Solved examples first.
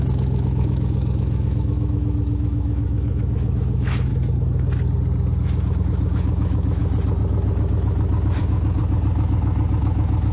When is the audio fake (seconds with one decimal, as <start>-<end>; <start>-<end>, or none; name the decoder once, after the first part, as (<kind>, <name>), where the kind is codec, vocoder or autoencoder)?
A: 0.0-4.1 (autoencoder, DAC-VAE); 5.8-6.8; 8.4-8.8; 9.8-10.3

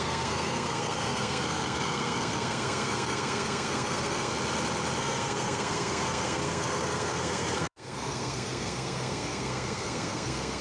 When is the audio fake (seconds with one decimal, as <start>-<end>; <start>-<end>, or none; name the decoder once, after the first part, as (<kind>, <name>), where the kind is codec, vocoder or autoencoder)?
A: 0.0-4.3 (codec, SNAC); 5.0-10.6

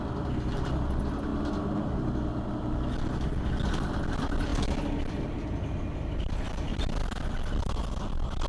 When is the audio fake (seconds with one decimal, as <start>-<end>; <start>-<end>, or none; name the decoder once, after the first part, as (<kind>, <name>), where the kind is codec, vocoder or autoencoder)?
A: 0.0-1.3 (vocoder, BigVGAN v2); 3.3-7.0; 7.7-8.5